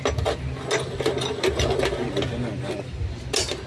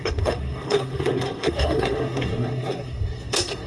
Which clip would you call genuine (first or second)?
first